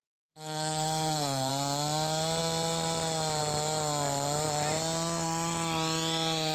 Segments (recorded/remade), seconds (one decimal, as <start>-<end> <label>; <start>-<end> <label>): 0.0-1.5 remade; 1.5-6.5 recorded